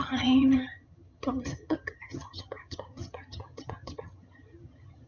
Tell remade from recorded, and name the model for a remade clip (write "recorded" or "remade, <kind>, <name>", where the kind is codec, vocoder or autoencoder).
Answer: remade, vocoder, HiFi-GAN